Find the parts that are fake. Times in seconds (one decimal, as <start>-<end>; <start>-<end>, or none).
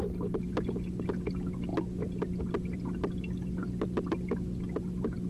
none